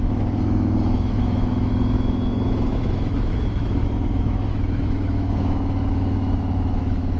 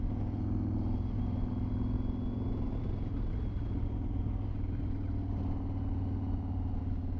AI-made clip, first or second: first